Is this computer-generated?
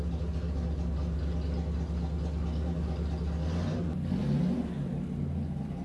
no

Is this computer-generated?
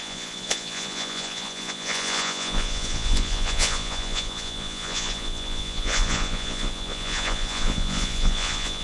yes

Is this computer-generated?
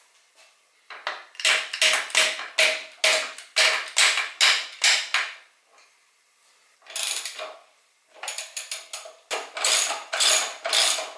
no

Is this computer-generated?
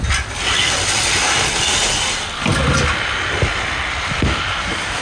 no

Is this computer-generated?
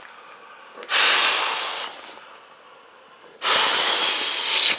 no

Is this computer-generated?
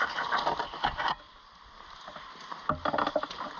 no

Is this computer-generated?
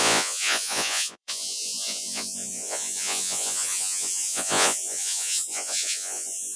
yes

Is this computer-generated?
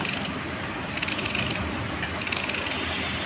no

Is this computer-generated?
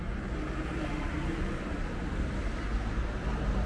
no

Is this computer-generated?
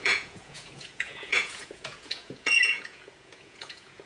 yes